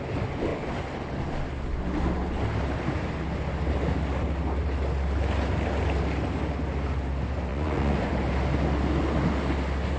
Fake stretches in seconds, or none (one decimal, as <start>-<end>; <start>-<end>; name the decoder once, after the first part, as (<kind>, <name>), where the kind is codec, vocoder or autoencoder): 7.5-8.1 (vocoder, Vocos)